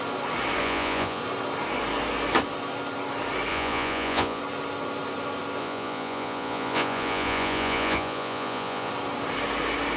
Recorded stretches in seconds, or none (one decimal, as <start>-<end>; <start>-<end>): 0.0-0.6; 1.2-3.5; 4.4-5.6; 8.9-10.0